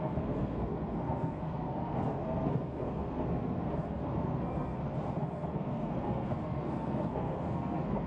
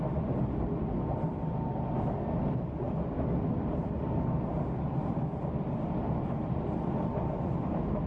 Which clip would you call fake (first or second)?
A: first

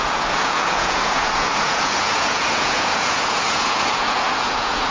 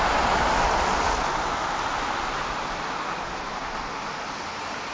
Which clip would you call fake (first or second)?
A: first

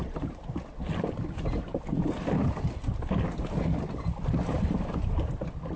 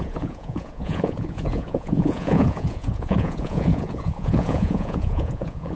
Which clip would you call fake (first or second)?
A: second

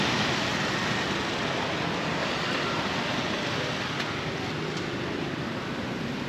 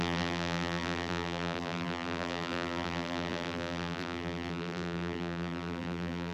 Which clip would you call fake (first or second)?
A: second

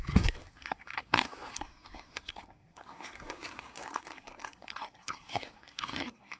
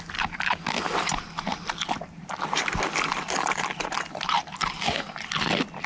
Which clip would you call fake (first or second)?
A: first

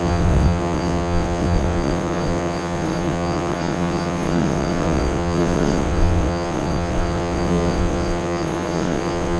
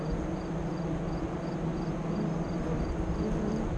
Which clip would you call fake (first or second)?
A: first